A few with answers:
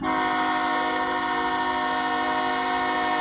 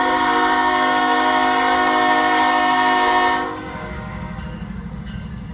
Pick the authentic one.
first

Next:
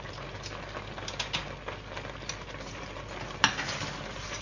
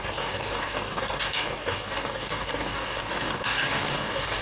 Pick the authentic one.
first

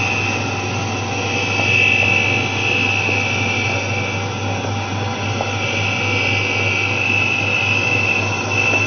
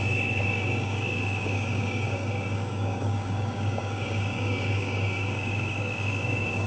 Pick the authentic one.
first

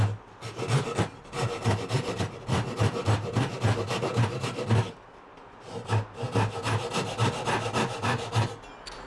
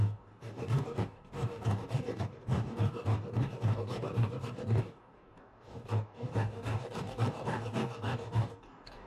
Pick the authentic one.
first